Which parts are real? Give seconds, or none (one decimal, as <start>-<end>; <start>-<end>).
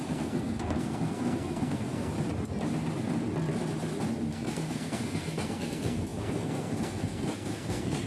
2.1-4.3